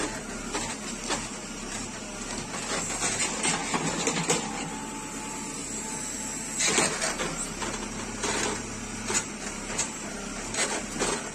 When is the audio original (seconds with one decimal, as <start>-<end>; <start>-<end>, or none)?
0.0-11.3